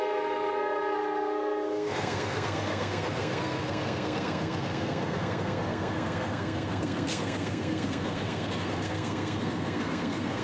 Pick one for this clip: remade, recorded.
remade